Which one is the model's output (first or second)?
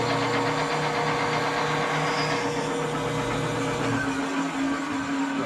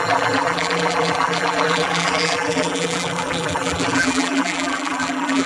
second